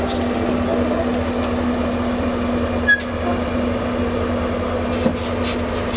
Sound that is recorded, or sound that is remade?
recorded